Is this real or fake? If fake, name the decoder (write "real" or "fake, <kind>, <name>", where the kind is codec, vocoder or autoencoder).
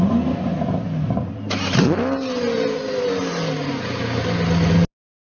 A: real